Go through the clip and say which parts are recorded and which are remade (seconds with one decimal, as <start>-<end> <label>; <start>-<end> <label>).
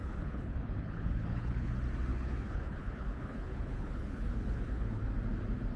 0.0-1.7 remade; 1.7-2.1 recorded; 2.1-5.0 remade; 5.0-5.8 recorded